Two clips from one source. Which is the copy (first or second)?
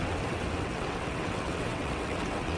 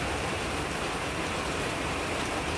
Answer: first